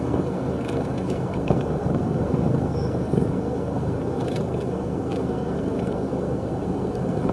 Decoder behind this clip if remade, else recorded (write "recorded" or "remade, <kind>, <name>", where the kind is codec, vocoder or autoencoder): remade, codec, SNAC